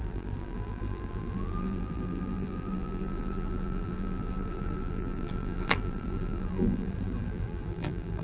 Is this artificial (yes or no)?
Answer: yes